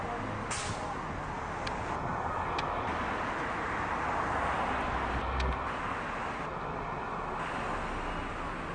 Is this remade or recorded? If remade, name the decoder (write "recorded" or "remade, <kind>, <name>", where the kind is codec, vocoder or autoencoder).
recorded